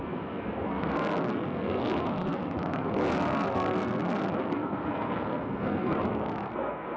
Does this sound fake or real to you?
fake